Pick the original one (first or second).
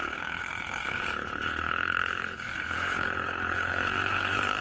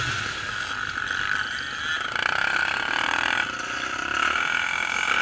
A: second